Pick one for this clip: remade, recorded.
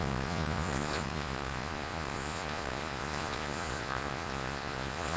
remade